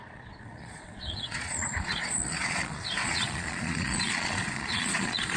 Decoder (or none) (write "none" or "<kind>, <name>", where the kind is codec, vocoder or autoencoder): vocoder, Vocos